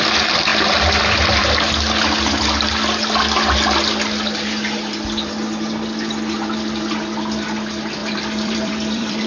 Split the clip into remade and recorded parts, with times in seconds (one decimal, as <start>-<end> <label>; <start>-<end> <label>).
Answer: 0.0-8.0 recorded; 8.0-9.3 remade